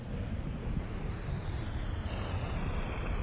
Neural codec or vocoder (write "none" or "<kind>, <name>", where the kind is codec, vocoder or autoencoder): vocoder, BigVGAN v2